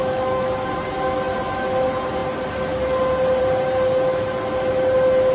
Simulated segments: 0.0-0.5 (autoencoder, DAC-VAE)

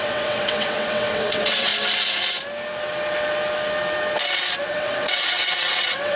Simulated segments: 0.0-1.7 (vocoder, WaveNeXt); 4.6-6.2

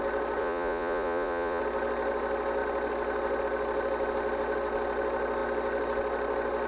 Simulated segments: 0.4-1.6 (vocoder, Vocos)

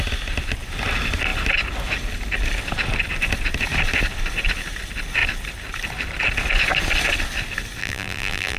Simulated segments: 7.8-8.6 (vocoder, BigVGAN v2)

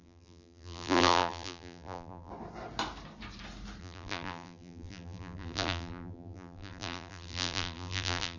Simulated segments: 0.0-2.3 (vocoder, BigVGAN v2); 3.8-8.4

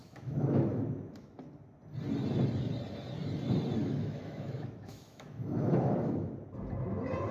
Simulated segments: 0.0-1.4 (autoencoder, DAC-VAE); 3.8-6.3

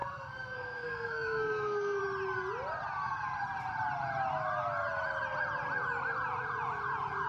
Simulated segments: 0.0-2.0 (codec, SNAC)